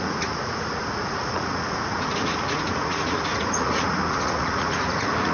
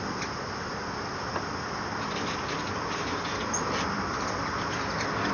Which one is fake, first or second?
first